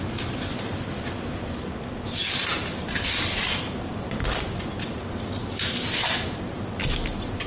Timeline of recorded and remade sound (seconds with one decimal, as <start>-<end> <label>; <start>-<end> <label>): 0.0-2.5 recorded; 2.5-3.5 remade; 3.5-7.5 recorded